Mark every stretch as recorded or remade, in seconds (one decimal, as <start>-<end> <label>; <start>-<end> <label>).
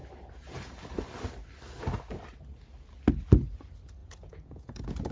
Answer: 0.0-4.0 recorded; 4.0-5.1 remade